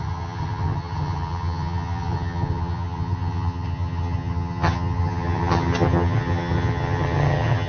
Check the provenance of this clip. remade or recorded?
remade